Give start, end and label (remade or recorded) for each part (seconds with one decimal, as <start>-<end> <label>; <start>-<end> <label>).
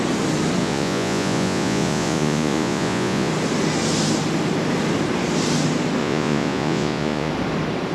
0.0-0.6 recorded; 0.6-3.3 remade; 3.3-6.0 recorded; 6.0-7.3 remade; 7.3-7.9 recorded